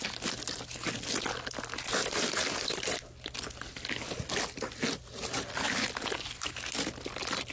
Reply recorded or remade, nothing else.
recorded